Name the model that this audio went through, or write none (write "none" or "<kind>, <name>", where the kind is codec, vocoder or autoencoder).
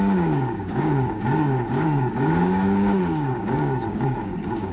codec, DAC